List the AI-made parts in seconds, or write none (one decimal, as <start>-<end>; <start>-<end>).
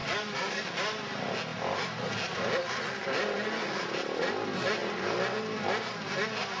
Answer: 0.0-0.6